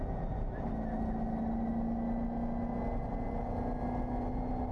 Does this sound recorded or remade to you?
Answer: recorded